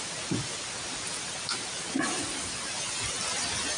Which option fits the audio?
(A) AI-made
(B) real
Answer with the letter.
B